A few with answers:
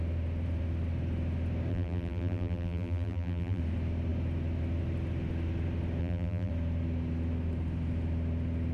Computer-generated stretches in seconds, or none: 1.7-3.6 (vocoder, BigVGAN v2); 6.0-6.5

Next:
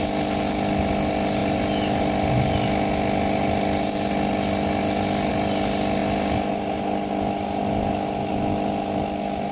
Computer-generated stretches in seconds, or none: none

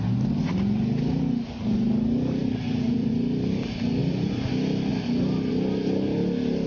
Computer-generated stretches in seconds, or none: 2.4-3.1 (vocoder, BigVGAN v2); 4.0-4.5

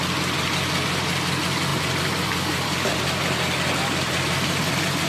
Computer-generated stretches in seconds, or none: 1.7-5.1 (vocoder, BigVGAN v2)